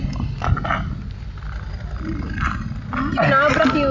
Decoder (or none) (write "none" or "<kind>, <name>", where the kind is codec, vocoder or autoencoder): none